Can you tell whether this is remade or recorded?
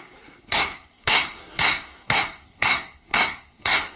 remade